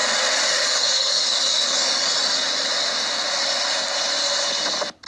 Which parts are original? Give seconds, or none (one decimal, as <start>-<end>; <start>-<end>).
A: 0.0-0.5; 2.1-5.1